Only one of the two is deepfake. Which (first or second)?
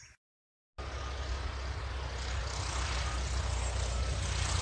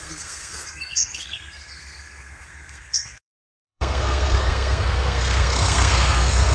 second